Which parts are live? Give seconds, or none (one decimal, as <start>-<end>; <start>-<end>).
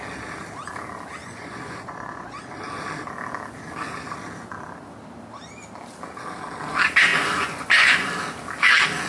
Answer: 0.0-1.2; 2.4-7.1; 8.1-9.1